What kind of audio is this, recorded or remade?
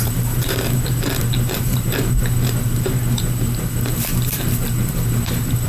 remade